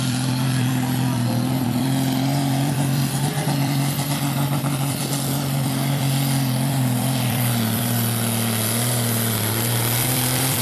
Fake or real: fake